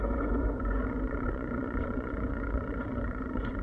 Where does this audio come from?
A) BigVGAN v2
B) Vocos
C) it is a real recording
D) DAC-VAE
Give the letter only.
B